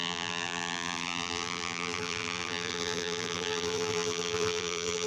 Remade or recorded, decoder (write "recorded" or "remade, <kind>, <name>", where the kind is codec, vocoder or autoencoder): remade, vocoder, BigVGAN v2